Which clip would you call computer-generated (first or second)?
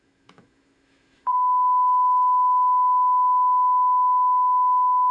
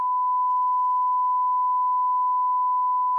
first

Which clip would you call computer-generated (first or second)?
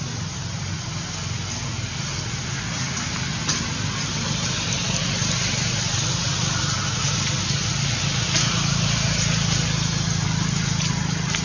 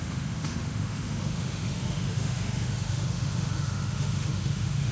second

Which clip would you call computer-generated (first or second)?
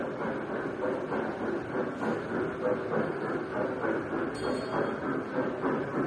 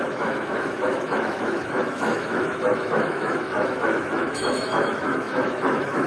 second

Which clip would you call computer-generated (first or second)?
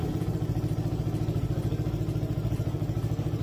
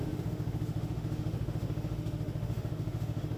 second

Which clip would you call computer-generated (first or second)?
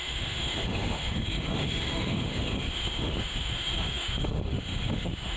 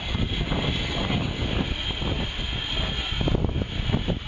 first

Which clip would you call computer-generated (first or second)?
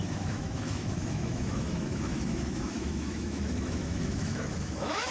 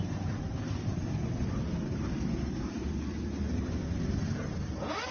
first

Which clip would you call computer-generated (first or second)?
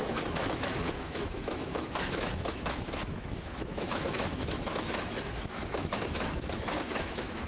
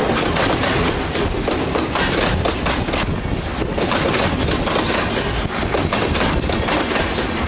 first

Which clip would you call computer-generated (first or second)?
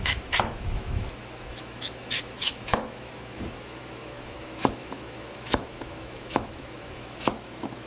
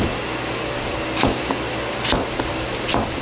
first